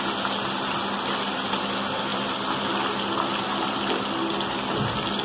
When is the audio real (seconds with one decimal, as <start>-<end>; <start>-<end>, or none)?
0.0-5.2